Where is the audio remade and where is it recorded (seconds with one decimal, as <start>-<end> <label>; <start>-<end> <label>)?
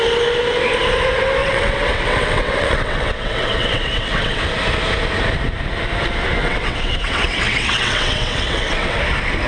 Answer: 0.0-1.4 recorded; 1.4-4.4 remade; 4.4-6.4 recorded; 6.4-9.0 remade; 9.0-9.5 recorded